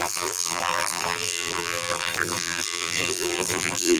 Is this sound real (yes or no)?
no